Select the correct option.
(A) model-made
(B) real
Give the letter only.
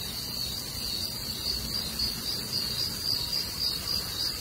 A